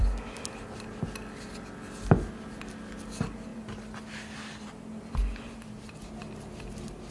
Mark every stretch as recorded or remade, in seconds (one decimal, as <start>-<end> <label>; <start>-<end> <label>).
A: 0.0-7.1 recorded